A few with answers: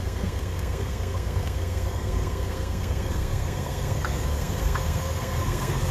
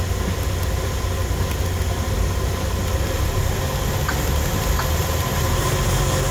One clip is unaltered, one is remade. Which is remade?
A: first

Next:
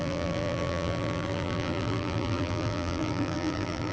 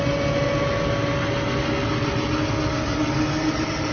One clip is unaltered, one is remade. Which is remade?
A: first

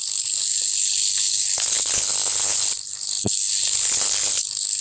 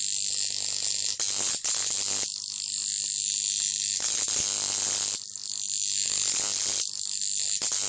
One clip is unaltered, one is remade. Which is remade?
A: first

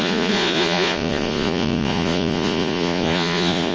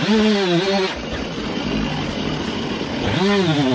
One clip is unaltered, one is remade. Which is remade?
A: first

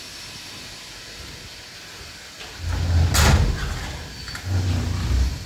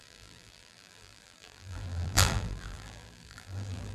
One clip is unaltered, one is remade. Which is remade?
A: second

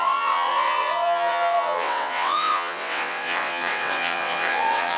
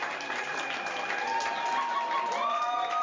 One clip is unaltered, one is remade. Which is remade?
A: first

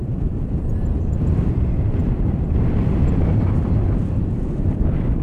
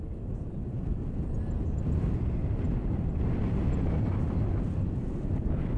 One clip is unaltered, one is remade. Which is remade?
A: first